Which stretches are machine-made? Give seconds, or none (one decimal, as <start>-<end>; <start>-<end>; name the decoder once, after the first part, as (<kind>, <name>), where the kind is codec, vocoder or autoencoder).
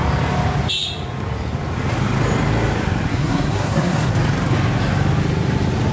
3.1-4.1 (codec, SNAC)